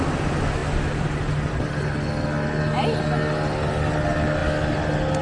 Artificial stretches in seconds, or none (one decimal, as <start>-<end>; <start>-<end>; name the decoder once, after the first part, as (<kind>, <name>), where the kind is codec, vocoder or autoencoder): none